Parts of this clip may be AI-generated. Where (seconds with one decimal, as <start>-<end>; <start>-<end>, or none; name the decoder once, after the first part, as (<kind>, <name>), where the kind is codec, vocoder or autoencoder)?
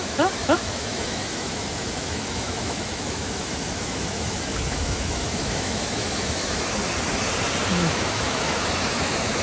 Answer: 0.0-6.8 (autoencoder, DAC-VAE); 7.7-9.4